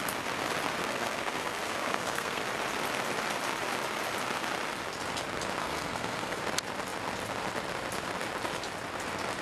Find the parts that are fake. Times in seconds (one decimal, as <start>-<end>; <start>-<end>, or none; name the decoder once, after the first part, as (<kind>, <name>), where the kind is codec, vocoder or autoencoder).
0.8-2.4 (codec, SNAC); 5.6-6.4